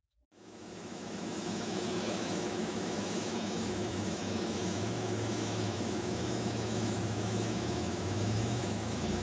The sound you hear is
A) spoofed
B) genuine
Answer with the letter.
A